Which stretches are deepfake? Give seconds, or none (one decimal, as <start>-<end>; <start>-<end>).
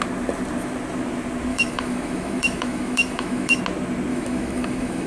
1.5-3.6; 4.1-5.1